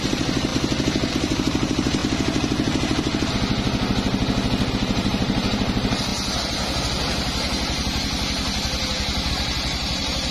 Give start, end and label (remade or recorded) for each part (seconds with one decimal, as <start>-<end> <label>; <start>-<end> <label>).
0.0-0.5 remade; 0.5-1.1 recorded; 1.1-2.0 remade; 2.0-4.7 recorded; 4.7-6.1 remade; 6.1-9.3 recorded; 9.3-10.3 remade